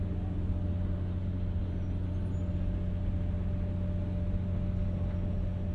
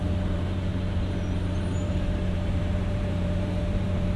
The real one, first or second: first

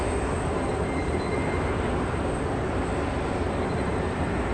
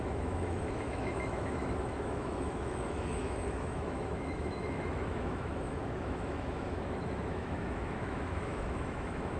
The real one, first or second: first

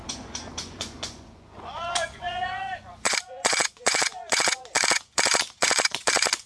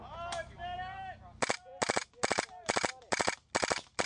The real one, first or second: second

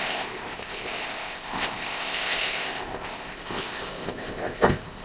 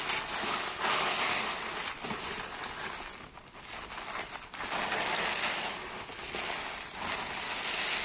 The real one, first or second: second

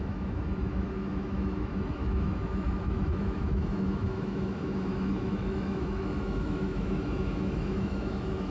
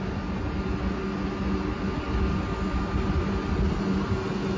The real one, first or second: second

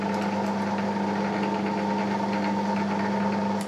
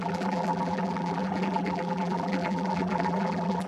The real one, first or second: first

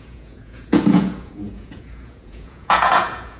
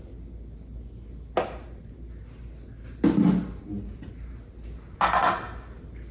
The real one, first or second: second